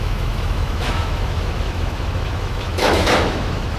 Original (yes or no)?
no